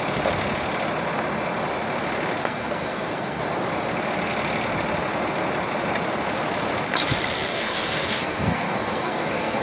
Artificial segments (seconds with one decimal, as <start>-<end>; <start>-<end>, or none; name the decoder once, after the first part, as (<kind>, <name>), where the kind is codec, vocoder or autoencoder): 2.4-3.4 (codec, SNAC); 7.5-9.6